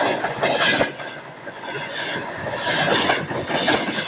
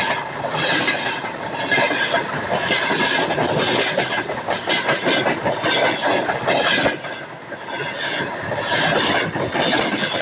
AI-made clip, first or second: first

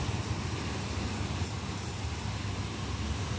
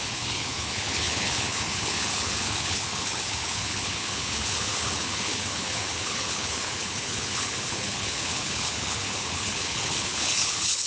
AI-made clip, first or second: second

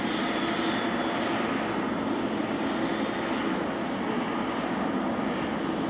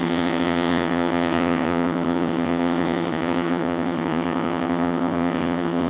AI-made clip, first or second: second